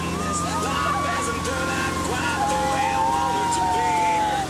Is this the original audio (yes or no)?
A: yes